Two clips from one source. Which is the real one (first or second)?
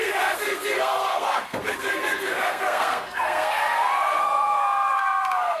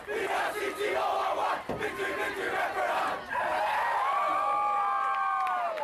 second